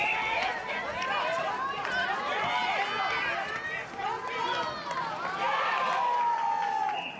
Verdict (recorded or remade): recorded